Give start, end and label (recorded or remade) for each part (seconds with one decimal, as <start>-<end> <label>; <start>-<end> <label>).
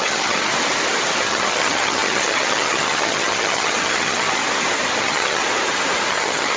0.0-0.5 remade; 0.5-1.2 recorded; 1.2-4.4 remade; 4.4-5.0 recorded; 5.0-5.4 remade; 5.4-6.1 recorded; 6.1-6.6 remade